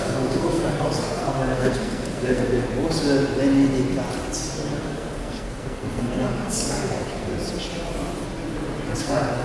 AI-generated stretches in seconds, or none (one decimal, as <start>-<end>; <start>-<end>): 0.0-2.7; 4.8-7.3; 9.0-9.4